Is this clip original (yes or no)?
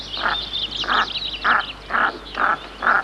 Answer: yes